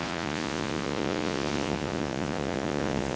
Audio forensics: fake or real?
fake